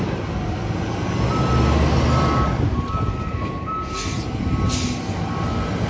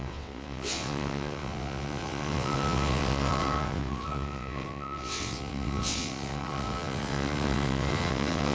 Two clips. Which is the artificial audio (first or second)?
second